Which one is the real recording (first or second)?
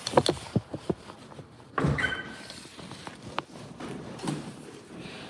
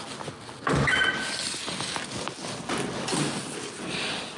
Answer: second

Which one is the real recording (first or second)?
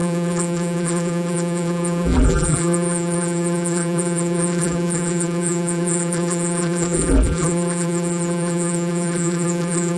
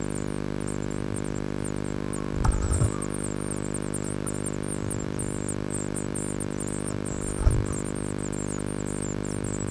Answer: second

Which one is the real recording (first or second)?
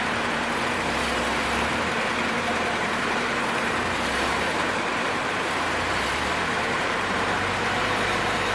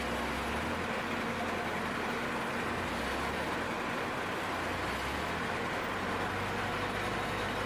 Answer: second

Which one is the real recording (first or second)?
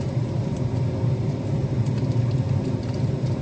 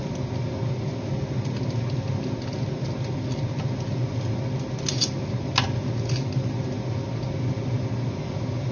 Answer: second